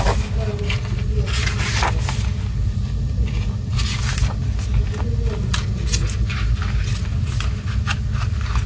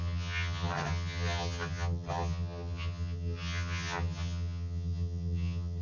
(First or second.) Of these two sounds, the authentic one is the first